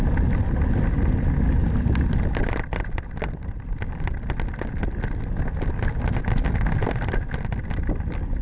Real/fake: real